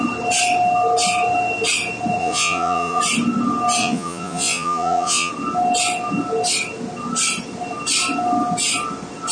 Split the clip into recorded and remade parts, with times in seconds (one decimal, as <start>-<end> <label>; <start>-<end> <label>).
0.0-2.2 recorded; 2.2-3.0 remade; 3.0-3.8 recorded; 3.8-5.3 remade; 5.3-9.3 recorded